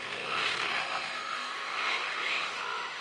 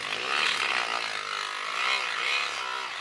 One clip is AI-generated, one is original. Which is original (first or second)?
second